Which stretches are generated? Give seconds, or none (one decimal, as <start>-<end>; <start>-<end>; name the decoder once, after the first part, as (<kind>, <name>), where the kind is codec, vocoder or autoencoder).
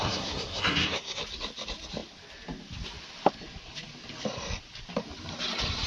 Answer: 0.0-1.2 (codec, SNAC)